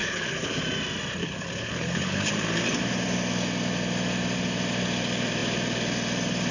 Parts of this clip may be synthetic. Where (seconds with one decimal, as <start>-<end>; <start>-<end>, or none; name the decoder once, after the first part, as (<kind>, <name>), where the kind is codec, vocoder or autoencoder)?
0.0-0.6 (codec, HILCodec); 1.2-2.3